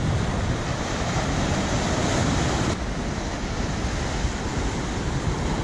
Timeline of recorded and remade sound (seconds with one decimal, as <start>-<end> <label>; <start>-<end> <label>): 0.0-0.7 recorded; 0.7-1.7 remade; 1.7-5.6 recorded